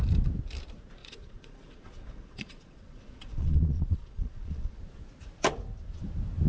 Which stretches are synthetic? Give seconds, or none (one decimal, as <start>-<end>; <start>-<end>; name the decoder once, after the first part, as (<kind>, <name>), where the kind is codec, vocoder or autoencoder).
1.0-4.8 (vocoder, Vocos)